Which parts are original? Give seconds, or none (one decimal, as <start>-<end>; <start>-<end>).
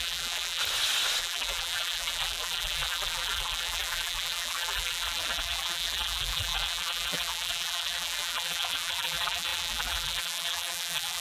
0.6-1.2